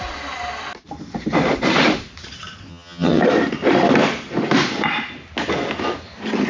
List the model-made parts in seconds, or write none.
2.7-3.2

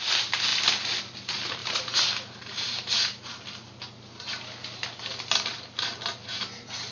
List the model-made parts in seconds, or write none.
none

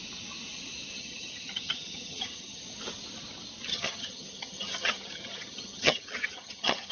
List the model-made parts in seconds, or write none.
1.0-2.6; 3.7-6.9

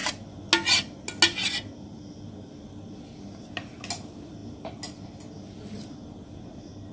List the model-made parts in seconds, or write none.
none

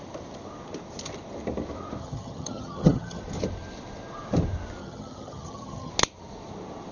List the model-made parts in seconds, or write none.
2.0-3.2; 4.8-5.9

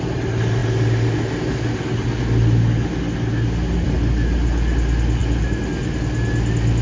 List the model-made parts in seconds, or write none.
none

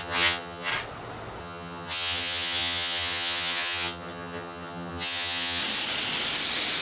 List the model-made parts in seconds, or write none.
0.0-0.7; 1.4-5.6

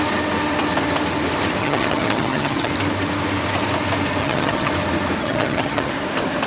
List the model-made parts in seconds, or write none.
1.6-2.7; 4.2-4.7; 5.2-5.9